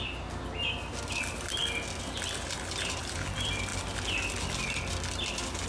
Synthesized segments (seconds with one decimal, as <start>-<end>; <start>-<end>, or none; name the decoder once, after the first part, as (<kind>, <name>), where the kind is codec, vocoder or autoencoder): none